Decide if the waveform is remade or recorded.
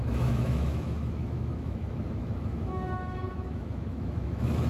remade